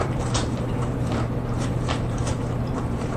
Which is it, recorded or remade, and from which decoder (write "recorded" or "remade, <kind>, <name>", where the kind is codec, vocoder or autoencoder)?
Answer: remade, vocoder, BigVGAN v2